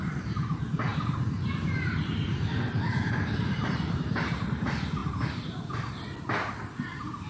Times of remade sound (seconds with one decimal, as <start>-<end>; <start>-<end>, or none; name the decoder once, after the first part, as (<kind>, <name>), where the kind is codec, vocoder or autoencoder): 0.0-5.0 (vocoder, BigVGAN v2); 6.5-7.3